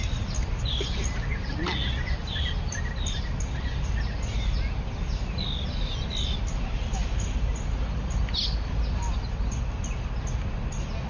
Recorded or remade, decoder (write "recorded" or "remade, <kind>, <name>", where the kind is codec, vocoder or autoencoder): recorded